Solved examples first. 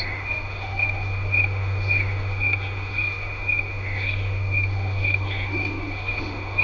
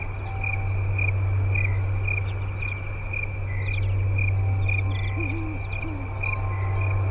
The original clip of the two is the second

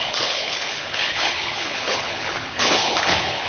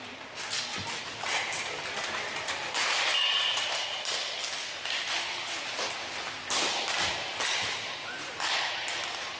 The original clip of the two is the second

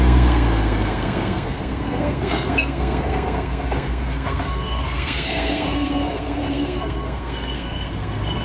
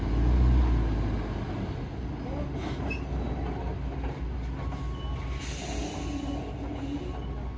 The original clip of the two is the second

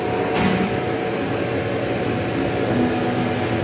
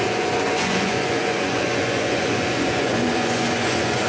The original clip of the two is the first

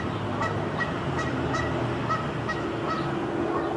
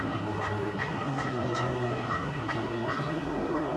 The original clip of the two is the first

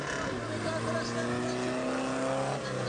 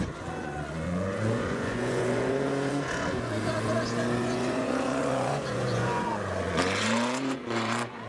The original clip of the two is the first